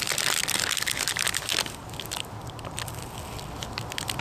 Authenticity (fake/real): real